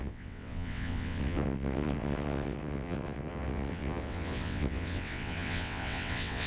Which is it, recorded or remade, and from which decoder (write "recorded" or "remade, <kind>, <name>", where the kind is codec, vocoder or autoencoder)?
remade, vocoder, WaveNeXt